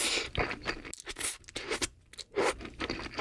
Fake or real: real